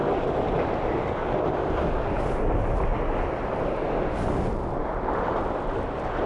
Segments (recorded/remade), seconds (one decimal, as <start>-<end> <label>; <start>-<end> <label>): 0.0-2.9 recorded; 2.9-4.3 remade; 4.3-6.3 recorded